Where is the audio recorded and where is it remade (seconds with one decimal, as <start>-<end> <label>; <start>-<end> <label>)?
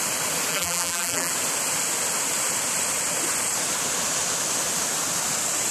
0.0-0.5 recorded; 0.5-1.3 remade; 1.3-5.7 recorded